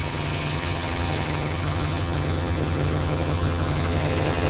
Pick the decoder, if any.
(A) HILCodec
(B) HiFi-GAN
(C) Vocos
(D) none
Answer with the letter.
B